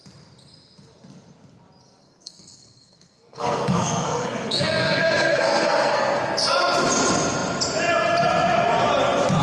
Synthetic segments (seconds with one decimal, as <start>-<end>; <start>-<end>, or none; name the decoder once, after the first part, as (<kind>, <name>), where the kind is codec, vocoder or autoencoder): 2.0-6.2 (codec, SNAC)